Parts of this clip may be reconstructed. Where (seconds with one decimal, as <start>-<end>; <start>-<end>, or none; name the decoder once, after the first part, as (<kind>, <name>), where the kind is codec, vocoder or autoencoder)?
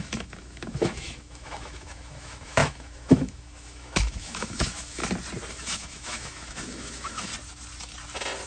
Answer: 0.0-5.0 (autoencoder, DAC-VAE); 5.5-7.3